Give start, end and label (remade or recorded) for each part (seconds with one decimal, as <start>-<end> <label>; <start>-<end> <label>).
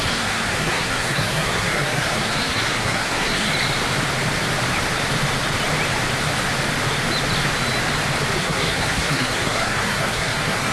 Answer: 0.0-3.5 remade; 3.5-8.4 recorded; 8.4-10.7 remade